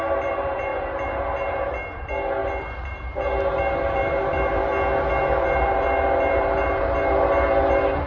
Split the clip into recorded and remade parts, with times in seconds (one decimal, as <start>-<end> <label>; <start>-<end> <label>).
0.0-4.6 remade; 4.6-5.1 recorded; 5.1-8.1 remade